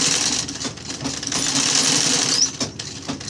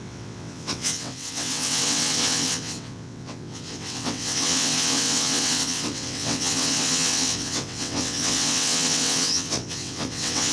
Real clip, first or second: first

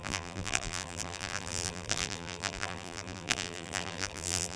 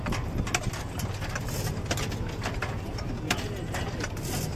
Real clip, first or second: second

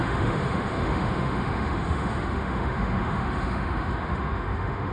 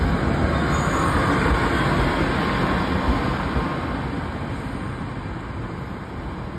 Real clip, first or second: second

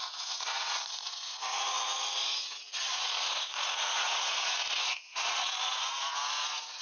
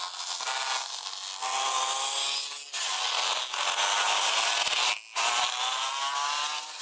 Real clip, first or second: second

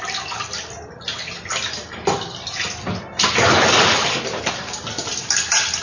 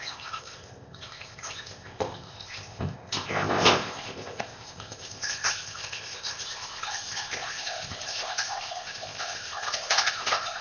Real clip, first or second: first